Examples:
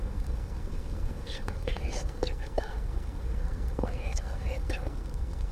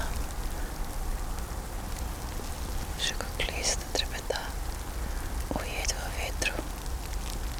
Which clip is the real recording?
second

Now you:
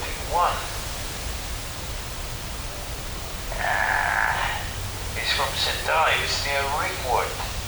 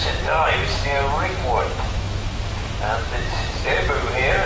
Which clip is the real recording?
first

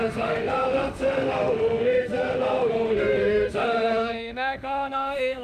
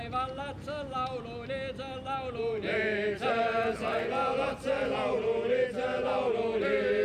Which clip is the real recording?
second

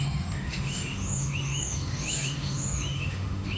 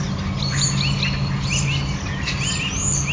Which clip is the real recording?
second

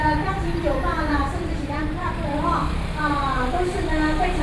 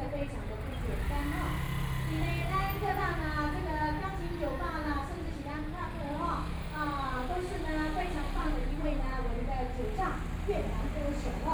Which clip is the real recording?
second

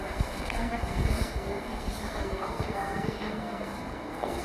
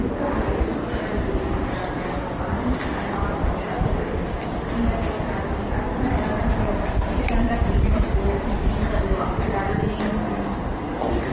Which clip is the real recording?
second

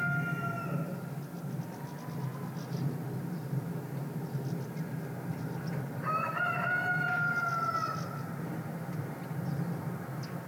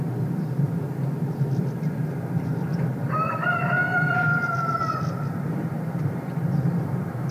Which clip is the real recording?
first